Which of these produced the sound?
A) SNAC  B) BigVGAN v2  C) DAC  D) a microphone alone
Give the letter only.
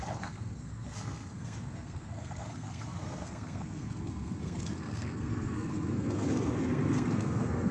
A